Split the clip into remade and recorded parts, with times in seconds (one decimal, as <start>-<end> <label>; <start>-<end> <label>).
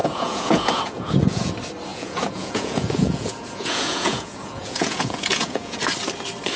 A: 0.0-1.5 remade; 1.5-1.9 recorded; 1.9-5.8 remade; 5.8-6.6 recorded